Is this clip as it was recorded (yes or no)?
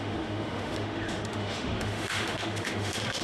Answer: no